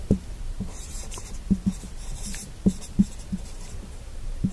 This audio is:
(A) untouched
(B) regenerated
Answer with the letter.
B